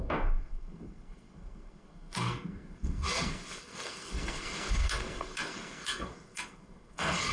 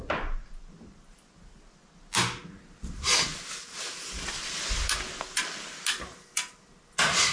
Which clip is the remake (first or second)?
first